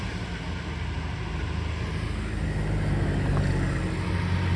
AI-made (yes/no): no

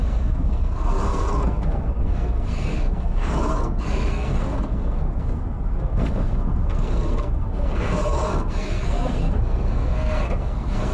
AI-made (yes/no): yes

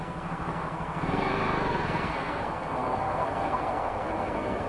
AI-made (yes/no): yes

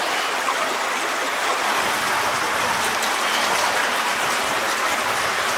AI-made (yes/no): no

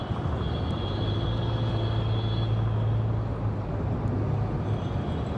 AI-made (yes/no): no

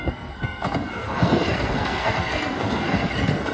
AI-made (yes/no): yes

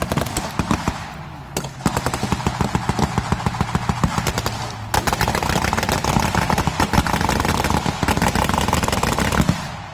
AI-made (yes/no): no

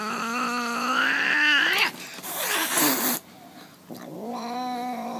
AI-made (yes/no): no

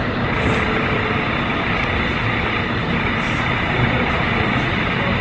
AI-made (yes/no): no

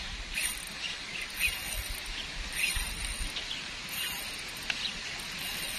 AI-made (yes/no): no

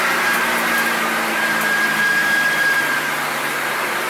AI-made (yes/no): no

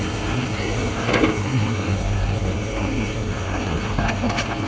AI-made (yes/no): yes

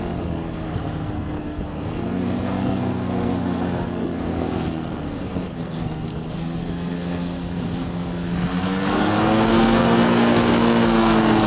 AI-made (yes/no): yes